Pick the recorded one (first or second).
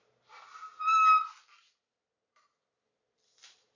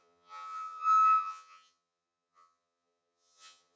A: first